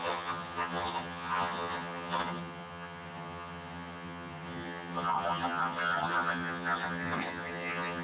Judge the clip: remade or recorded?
remade